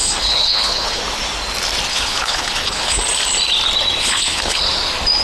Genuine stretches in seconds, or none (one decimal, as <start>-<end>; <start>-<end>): 1.0-1.9; 3.0-4.0; 4.6-5.2